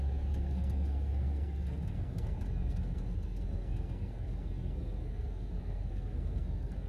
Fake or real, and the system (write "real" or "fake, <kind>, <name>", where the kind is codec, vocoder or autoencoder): fake, codec, SNAC